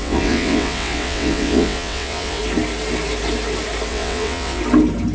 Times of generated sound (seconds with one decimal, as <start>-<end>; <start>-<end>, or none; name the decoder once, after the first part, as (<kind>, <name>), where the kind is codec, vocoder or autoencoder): 0.0-2.4 (vocoder, WaveNeXt); 3.9-4.6